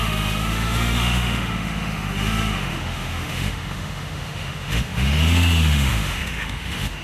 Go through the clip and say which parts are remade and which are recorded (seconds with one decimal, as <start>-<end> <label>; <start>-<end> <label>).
0.0-7.0 remade